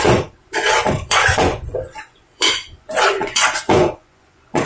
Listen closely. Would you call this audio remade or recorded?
remade